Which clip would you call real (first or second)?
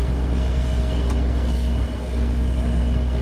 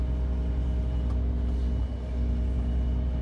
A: second